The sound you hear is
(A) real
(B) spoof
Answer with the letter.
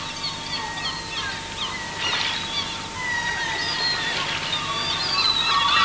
A